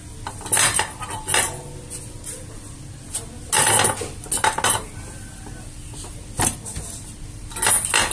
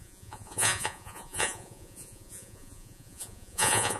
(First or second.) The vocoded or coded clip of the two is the second